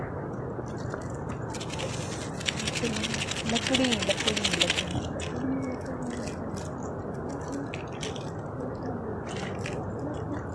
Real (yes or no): yes